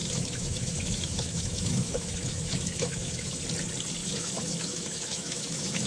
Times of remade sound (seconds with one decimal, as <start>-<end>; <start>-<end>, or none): 0.0-3.4; 4.0-5.9

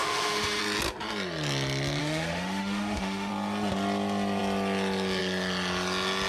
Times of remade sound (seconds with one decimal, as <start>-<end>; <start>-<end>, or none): 0.0-0.6; 2.0-3.3